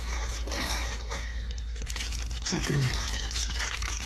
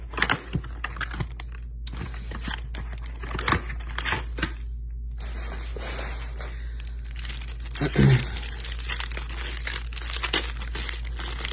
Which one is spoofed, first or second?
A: first